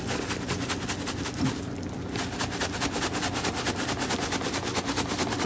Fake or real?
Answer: real